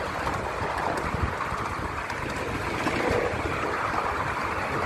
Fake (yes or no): no